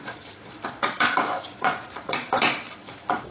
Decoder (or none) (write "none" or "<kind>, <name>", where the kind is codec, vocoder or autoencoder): vocoder, Vocos